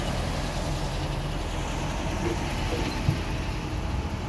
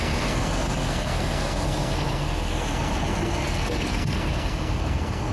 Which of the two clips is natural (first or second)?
first